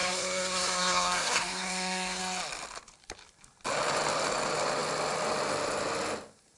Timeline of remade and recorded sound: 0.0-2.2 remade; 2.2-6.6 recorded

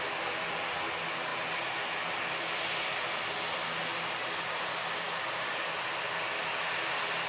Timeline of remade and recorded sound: 0.0-7.3 recorded

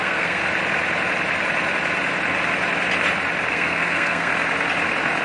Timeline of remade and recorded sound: 0.0-0.4 remade; 0.4-3.5 recorded; 3.5-4.3 remade; 4.3-5.2 recorded